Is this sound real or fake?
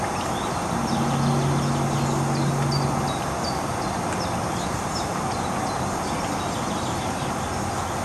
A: real